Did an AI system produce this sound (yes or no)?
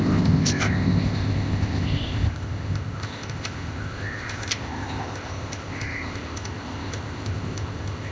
yes